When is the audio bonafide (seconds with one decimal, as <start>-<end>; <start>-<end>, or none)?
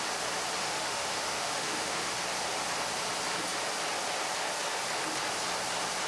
0.0-0.6; 2.1-6.1